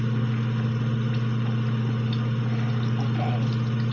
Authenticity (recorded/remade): recorded